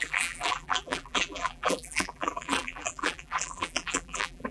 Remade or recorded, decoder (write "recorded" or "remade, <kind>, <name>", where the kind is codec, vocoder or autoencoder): remade, vocoder, BigVGAN v2